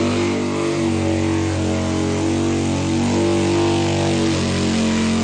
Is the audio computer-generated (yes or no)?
no